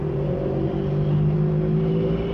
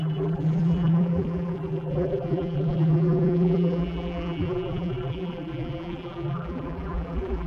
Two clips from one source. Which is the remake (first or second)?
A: second